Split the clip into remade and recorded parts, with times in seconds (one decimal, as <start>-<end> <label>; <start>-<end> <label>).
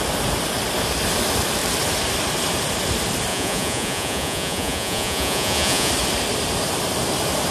0.0-3.3 recorded; 3.3-5.9 remade; 5.9-7.5 recorded